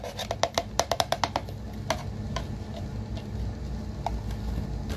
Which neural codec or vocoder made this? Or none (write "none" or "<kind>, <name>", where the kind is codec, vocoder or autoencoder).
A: none